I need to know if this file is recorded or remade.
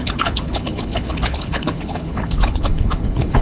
remade